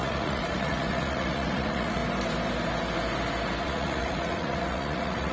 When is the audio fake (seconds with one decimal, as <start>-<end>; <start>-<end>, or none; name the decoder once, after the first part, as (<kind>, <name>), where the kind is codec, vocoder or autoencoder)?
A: 0.0-2.0 (vocoder, Vocos); 3.6-5.3